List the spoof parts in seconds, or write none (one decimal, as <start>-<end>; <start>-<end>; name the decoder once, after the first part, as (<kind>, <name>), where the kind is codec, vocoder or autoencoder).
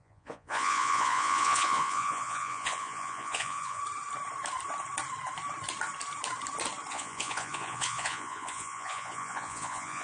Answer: 0.0-3.8 (vocoder, Vocos); 6.9-10.0